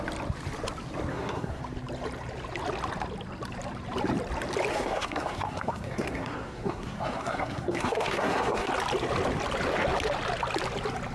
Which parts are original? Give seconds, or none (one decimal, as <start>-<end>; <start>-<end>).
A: 0.0-1.1; 1.6-4.7; 8.7-11.1